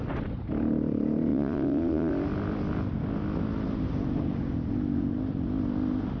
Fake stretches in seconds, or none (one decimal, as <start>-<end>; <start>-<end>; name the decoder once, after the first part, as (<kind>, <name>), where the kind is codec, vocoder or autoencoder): 1.3-2.1 (vocoder, Vocos)